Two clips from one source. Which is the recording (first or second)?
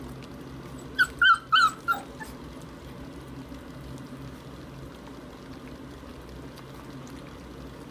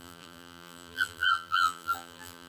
first